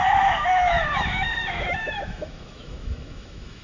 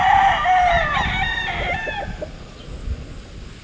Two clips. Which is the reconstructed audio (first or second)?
first